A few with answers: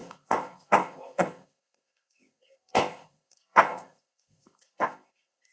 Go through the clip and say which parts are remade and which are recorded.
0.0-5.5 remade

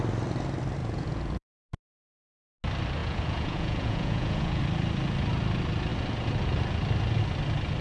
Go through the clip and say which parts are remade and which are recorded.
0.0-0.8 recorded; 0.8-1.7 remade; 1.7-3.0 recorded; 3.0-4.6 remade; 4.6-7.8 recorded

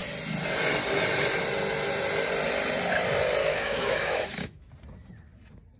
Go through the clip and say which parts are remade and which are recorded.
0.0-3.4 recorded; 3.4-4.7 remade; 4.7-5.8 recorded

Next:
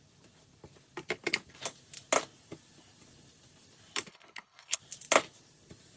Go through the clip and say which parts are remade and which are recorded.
0.0-4.1 recorded; 4.1-4.8 remade; 4.8-6.0 recorded

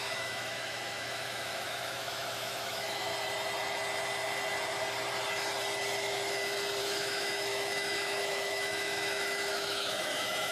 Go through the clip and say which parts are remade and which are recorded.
0.0-3.1 remade; 3.1-6.8 recorded; 6.8-10.5 remade

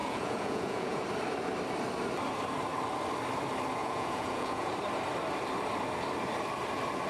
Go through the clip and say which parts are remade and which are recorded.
0.0-1.0 remade; 1.0-3.8 recorded; 3.8-4.7 remade; 4.7-7.1 recorded

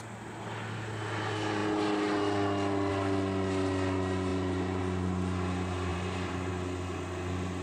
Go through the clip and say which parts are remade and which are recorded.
0.0-4.3 recorded; 4.3-4.8 remade; 4.8-5.9 recorded; 5.9-6.5 remade; 6.5-7.6 recorded